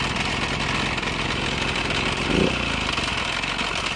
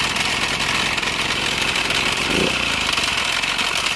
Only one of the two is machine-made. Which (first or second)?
second